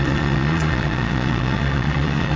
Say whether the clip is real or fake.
fake